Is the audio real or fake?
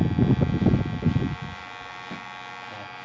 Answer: real